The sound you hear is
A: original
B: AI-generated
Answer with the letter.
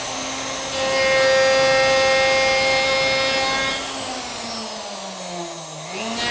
A